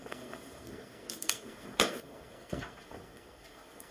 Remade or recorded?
remade